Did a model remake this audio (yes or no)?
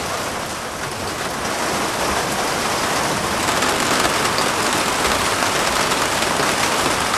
no